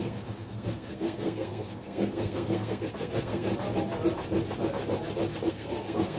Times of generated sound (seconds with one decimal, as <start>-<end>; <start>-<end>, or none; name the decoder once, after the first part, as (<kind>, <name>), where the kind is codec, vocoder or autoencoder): 0.0-3.5 (codec, SNAC); 5.5-6.2